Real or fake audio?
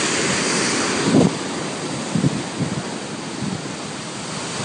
real